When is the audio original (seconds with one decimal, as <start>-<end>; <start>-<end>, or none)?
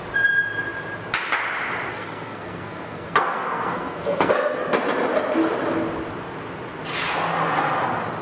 0.0-1.9; 4.6-8.2